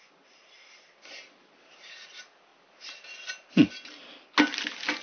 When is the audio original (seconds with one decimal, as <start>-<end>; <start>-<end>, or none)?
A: 0.0-5.0